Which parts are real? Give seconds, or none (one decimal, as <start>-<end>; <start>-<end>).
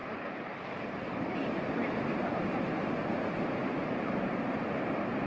1.7-3.6; 4.3-5.3